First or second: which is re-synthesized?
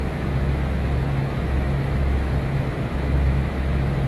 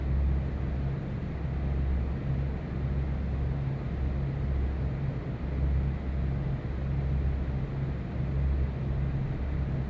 first